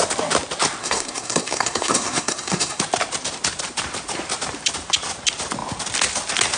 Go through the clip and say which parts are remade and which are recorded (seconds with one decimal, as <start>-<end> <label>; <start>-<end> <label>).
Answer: 0.0-0.8 recorded; 0.8-2.8 remade; 2.8-6.6 recorded

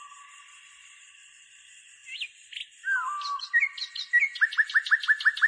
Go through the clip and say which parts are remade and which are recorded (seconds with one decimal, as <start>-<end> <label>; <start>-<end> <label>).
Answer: 0.0-5.5 recorded

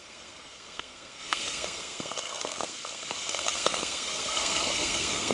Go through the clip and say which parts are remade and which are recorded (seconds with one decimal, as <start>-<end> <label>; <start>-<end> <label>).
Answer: 0.0-5.3 remade

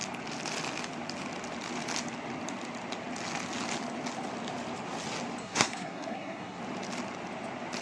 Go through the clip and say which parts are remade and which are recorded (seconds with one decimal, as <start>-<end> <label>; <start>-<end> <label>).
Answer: 0.0-5.4 recorded; 5.4-6.6 remade; 6.6-7.8 recorded

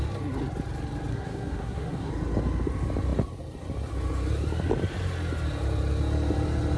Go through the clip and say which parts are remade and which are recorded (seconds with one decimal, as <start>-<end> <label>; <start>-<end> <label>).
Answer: 0.0-1.1 recorded; 1.1-2.1 remade; 2.1-6.8 recorded

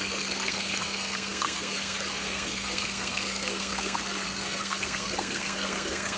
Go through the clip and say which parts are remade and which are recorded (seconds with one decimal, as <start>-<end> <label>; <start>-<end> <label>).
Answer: 0.0-6.2 remade

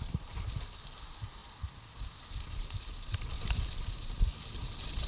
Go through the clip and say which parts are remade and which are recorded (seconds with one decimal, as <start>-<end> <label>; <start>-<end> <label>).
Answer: 0.0-5.1 recorded

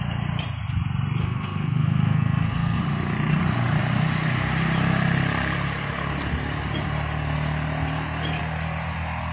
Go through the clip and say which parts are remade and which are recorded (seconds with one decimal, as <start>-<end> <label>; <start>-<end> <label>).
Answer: 0.0-1.2 recorded; 1.2-2.8 remade; 2.8-9.3 recorded